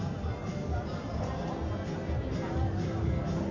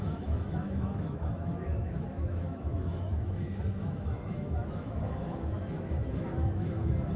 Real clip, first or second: first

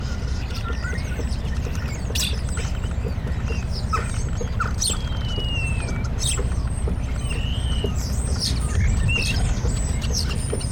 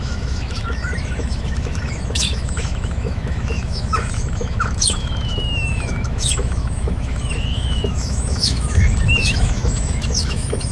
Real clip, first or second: first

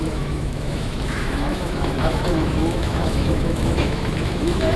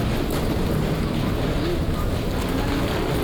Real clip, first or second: second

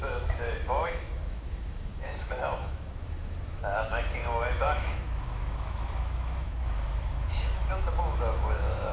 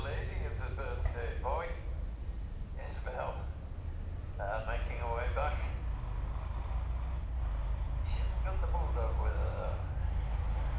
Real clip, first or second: second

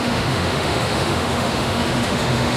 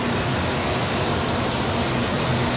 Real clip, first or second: second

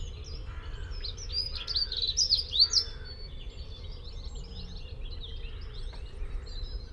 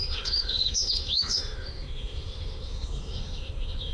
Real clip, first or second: first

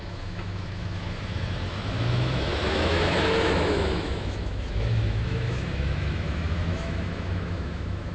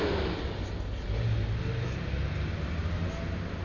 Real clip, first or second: second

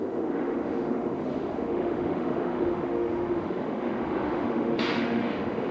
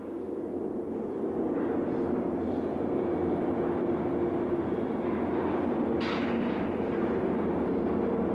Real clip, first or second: second